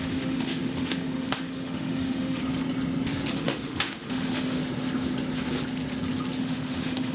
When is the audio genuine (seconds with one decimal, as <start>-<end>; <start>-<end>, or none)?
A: 2.4-3.3; 4.6-6.4